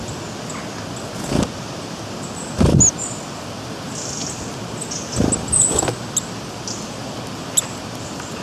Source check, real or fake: real